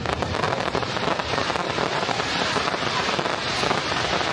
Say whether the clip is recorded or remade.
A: remade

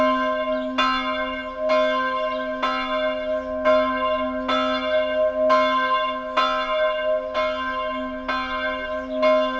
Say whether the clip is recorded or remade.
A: recorded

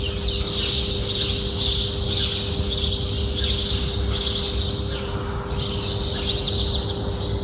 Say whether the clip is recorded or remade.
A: recorded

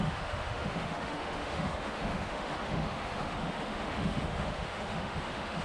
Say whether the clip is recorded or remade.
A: remade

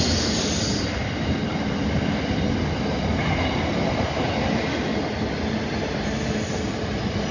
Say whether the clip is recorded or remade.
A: recorded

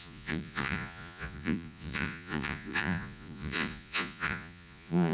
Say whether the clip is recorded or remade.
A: remade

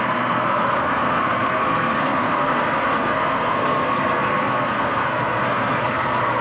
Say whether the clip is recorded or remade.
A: remade